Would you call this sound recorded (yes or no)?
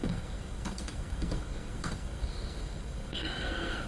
no